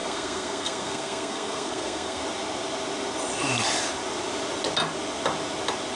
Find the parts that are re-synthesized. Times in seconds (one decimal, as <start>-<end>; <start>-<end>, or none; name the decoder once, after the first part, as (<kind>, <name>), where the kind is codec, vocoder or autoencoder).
0.0-2.2 (codec, SNAC)

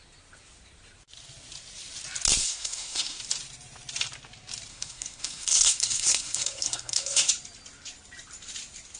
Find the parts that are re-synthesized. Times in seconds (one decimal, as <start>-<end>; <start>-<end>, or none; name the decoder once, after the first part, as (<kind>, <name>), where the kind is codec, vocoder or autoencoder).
2.4-3.2 (codec, SNAC); 4.7-7.3